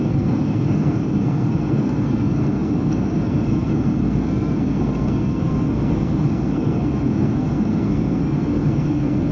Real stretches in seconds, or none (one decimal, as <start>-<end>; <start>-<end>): none